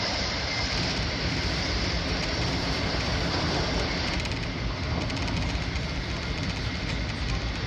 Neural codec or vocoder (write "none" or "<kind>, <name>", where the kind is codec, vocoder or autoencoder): vocoder, BigVGAN v2